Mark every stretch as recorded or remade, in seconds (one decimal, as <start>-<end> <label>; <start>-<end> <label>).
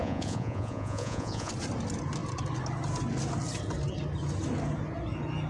0.0-1.5 remade; 1.5-5.5 recorded